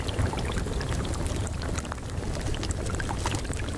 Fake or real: real